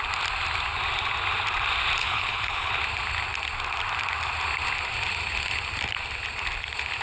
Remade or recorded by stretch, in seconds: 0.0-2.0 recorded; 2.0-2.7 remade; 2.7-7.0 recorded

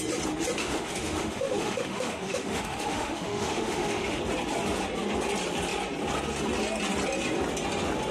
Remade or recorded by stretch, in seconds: 0.0-0.6 recorded; 0.6-4.2 remade; 4.2-8.1 recorded

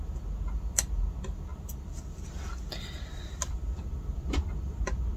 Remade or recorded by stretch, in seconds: 0.0-5.2 recorded

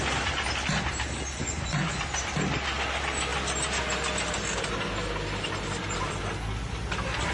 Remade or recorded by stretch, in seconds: 0.0-1.4 recorded; 1.4-2.0 remade; 2.0-7.3 recorded

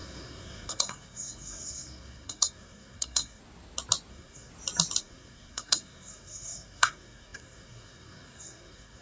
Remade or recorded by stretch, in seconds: 0.0-3.4 remade; 3.4-4.1 recorded; 4.1-4.5 remade; 4.5-5.0 recorded; 5.0-9.0 remade